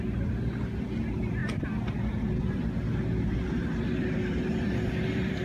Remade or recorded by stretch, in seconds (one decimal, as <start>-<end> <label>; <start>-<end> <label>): 0.0-5.4 recorded